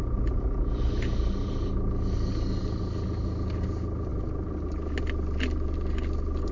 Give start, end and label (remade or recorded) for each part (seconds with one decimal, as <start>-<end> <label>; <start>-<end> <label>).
0.0-6.5 recorded